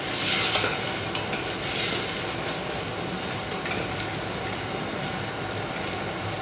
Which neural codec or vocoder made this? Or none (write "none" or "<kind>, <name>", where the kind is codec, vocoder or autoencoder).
none